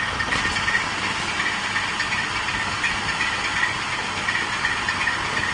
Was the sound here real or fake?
real